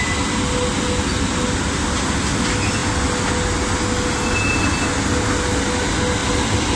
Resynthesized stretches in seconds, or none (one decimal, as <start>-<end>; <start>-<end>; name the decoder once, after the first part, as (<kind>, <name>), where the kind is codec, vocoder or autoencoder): none